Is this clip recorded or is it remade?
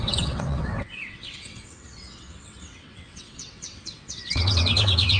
remade